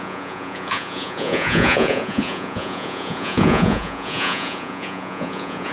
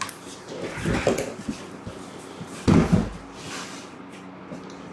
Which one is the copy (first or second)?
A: first